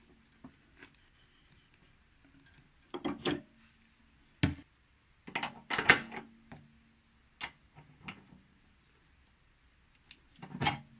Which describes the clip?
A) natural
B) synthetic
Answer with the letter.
A